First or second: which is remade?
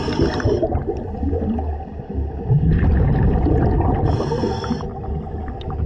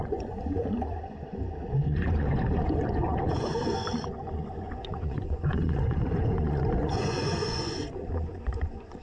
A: second